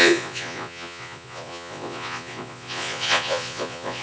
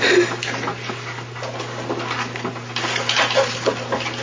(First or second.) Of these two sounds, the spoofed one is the first